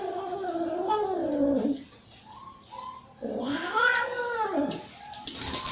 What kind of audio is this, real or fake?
real